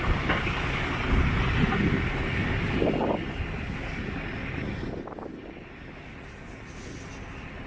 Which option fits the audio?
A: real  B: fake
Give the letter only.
A